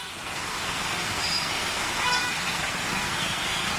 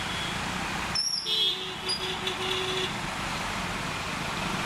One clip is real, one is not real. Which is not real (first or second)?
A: first